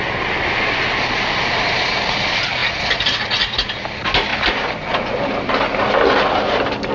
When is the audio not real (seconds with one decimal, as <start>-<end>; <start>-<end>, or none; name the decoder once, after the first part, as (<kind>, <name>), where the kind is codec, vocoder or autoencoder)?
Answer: none